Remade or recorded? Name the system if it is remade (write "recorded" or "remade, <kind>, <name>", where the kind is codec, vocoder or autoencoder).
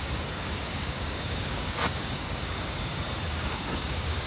remade, codec, DAC